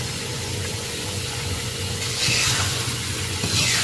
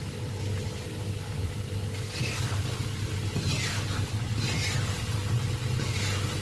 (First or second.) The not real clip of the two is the first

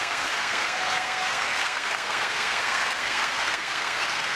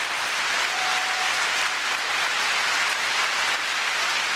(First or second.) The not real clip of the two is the first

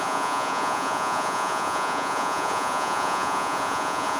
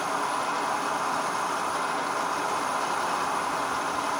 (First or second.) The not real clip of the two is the first